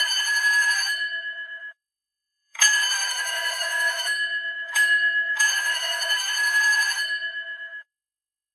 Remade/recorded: remade